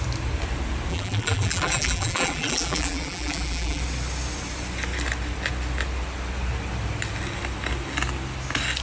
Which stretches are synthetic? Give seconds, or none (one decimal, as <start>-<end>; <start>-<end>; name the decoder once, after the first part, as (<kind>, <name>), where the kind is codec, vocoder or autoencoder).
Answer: 0.9-3.8 (vocoder, BigVGAN v2)